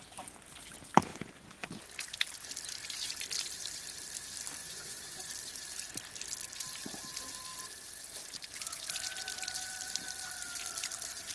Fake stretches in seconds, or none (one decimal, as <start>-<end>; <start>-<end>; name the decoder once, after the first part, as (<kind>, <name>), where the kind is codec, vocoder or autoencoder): 1.1-1.7 (vocoder, Vocos); 4.6-5.3